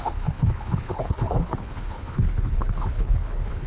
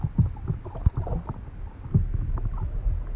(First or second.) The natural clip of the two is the second